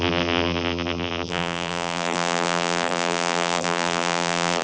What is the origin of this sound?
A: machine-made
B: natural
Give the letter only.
A